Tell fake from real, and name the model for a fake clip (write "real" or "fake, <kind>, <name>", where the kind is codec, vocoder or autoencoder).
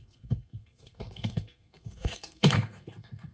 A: fake, codec, SNAC